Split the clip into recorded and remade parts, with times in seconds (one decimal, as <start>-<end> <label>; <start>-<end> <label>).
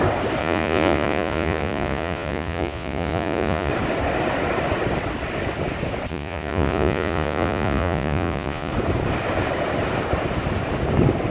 0.0-0.4 recorded; 0.4-3.7 remade; 3.7-6.1 recorded; 6.1-8.7 remade; 8.7-11.3 recorded